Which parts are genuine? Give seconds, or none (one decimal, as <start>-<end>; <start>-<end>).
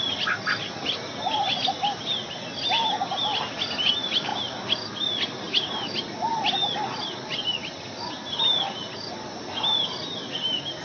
0.0-10.8